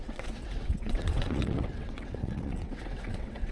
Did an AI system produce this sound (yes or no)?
yes